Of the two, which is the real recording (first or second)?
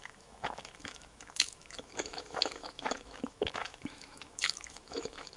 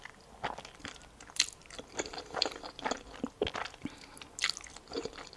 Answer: second